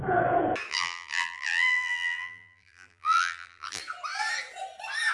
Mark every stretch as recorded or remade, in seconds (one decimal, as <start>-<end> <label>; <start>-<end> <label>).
0.0-0.7 recorded; 0.7-3.8 remade; 3.8-5.1 recorded